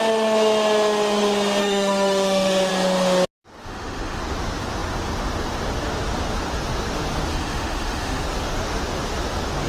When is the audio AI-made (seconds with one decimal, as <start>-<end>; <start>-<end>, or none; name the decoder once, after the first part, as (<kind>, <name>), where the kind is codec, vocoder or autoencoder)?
1.6-2.7 (autoencoder, DAC-VAE); 3.6-4.2; 7.3-8.2

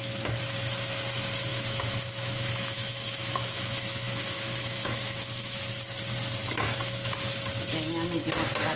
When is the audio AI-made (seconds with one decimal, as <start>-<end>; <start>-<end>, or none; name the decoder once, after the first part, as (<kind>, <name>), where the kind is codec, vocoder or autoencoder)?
1.5-5.6 (autoencoder, DAC-VAE)

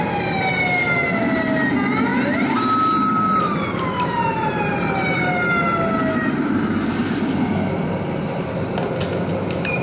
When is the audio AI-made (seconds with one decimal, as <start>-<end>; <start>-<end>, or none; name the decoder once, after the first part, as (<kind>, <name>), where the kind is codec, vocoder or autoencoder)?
none